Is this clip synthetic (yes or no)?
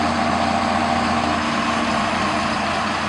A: no